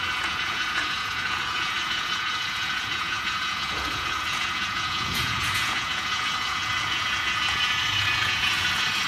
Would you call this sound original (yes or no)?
no